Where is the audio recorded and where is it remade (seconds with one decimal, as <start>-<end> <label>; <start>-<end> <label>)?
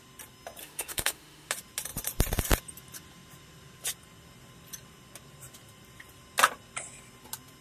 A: 0.0-0.6 recorded; 0.6-1.5 remade; 1.5-7.6 recorded